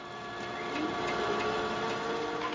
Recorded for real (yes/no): yes